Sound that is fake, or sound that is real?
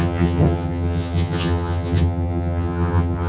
fake